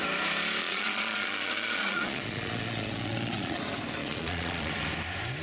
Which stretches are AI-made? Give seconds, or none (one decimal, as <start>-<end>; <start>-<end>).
0.6-3.6; 4.0-4.7